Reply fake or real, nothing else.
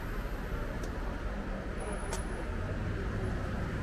real